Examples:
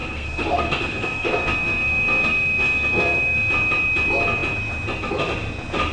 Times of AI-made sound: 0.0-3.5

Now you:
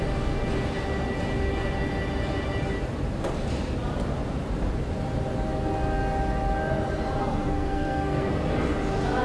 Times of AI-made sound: 7.2-8.3

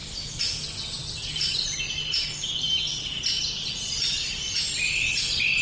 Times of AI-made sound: none